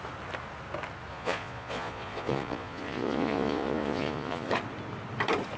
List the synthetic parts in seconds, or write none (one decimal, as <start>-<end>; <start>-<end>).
1.1-4.5